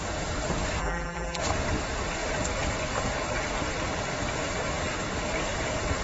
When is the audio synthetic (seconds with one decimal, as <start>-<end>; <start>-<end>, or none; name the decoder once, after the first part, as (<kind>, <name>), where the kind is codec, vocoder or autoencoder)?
0.8-1.4 (vocoder, BigVGAN v2)

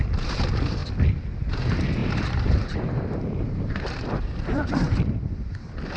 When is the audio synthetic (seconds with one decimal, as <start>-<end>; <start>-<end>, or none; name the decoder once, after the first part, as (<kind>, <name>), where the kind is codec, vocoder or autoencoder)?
2.0-5.6 (vocoder, BigVGAN v2)

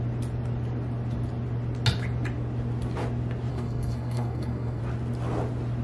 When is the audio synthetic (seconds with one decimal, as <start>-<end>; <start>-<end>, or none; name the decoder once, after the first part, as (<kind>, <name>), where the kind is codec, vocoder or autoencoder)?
3.5-4.8 (codec, SNAC)

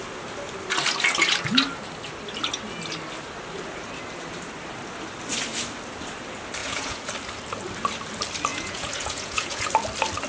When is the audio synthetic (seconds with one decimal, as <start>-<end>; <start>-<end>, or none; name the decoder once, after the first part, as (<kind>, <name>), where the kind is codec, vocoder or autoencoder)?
6.6-7.1 (vocoder, Vocos); 8.5-9.7

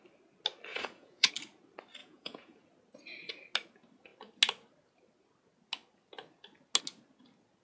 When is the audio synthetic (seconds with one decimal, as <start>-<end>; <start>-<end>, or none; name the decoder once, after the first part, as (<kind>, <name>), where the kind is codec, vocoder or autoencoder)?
0.7-1.3 (vocoder, Vocos); 2.0-2.6

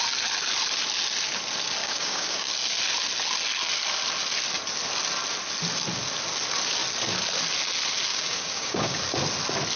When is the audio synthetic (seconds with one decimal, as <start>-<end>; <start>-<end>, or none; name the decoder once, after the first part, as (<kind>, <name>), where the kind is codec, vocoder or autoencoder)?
1.8-2.5 (codec, DAC); 8.1-9.0

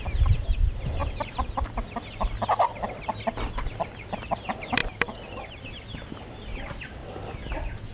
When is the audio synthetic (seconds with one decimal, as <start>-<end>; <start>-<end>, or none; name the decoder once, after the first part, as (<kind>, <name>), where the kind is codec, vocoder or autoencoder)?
none

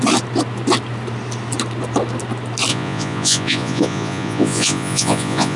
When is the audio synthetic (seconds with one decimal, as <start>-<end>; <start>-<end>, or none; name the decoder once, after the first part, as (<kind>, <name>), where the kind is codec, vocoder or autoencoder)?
2.7-5.6 (vocoder, Vocos)